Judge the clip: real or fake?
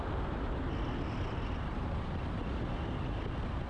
real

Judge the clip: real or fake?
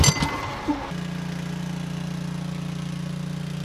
real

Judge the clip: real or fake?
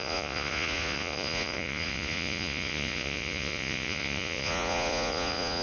fake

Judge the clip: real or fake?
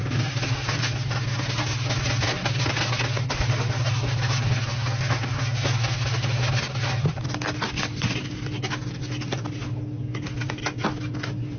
real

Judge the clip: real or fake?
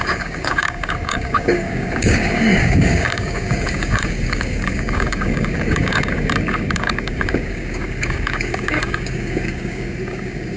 fake